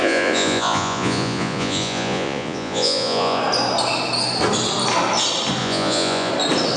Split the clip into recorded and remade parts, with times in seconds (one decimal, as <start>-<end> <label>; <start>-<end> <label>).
0.0-3.4 remade; 3.4-5.6 recorded; 5.6-6.3 remade; 6.3-6.8 recorded